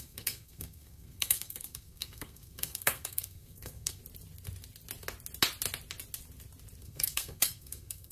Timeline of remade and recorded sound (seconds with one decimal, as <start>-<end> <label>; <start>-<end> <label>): 0.0-4.0 remade; 4.0-6.8 recorded; 6.8-8.1 remade